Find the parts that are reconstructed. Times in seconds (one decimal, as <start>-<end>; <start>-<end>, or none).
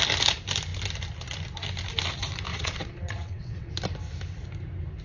2.5-3.7